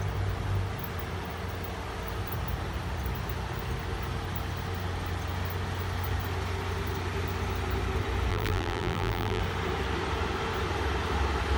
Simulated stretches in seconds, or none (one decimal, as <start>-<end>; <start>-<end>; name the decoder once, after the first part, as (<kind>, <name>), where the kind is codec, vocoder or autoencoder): 8.3-9.4 (vocoder, BigVGAN v2)